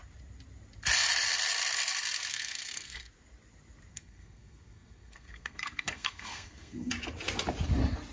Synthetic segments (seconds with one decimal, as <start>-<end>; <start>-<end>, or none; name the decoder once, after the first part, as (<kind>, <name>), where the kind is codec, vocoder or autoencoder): 2.3-3.1 (codec, SNAC); 3.9-6.9